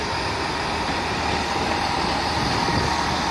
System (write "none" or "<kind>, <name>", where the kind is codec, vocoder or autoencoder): none